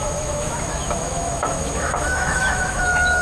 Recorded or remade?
remade